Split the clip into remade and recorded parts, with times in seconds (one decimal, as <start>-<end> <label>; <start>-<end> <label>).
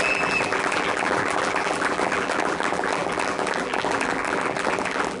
0.0-5.2 remade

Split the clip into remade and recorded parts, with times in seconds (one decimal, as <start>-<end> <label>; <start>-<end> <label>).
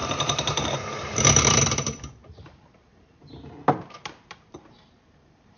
0.0-5.6 remade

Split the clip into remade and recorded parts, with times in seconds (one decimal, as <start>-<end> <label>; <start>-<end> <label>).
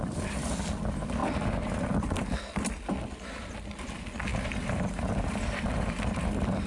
0.0-4.3 recorded; 4.3-6.7 remade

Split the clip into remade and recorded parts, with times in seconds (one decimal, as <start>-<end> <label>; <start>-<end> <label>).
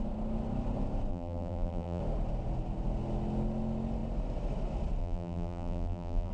0.0-1.1 recorded; 1.1-2.0 remade; 2.0-5.0 recorded; 5.0-6.3 remade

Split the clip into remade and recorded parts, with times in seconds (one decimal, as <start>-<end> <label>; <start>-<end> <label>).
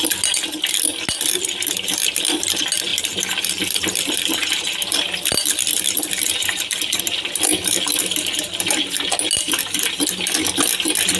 0.0-2.9 recorded; 2.9-4.7 remade; 4.7-5.7 recorded; 5.7-7.0 remade; 7.0-11.2 recorded